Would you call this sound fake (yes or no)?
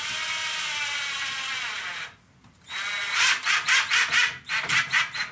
no